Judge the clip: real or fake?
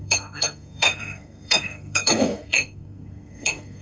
fake